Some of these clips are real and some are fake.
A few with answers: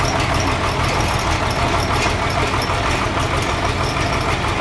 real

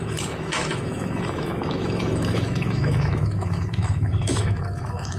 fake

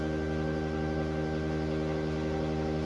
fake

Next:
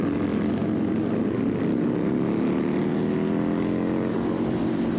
real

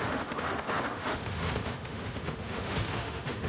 fake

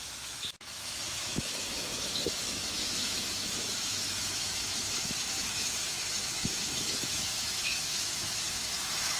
fake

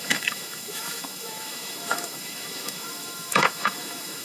fake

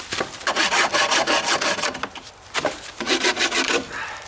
real